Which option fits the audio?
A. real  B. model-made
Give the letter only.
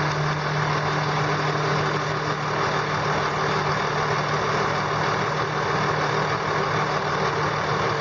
A